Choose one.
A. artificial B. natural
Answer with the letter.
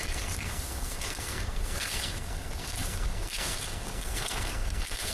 A